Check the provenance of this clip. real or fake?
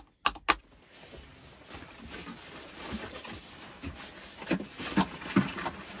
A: real